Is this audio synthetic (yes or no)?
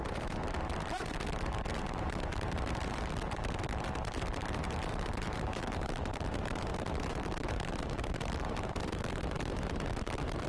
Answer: yes